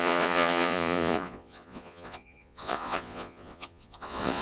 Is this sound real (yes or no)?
no